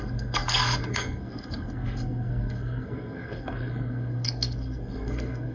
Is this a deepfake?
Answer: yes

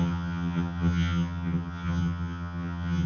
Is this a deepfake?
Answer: yes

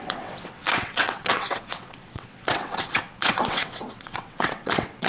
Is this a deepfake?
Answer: yes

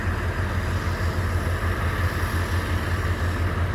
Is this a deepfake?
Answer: no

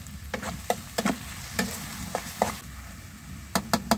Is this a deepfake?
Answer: no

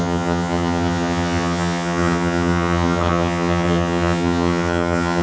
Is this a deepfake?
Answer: yes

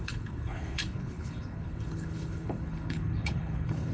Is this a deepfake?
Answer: yes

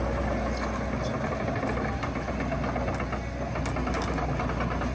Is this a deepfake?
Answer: no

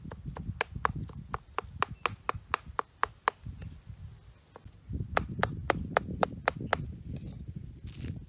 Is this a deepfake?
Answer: no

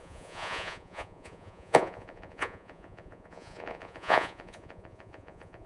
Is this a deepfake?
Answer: yes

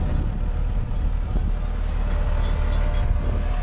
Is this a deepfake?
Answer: no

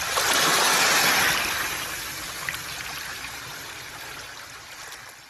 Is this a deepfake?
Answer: no